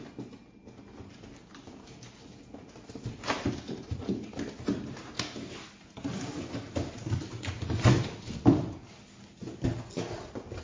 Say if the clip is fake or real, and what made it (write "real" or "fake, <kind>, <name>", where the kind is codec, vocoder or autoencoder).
real